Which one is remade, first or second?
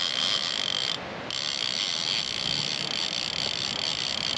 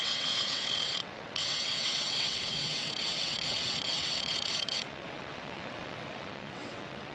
second